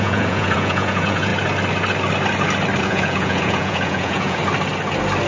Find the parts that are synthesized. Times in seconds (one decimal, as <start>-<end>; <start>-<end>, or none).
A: 0.0-1.3; 2.8-4.4